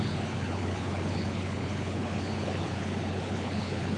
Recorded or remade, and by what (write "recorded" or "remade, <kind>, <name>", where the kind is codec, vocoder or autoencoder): remade, codec, HILCodec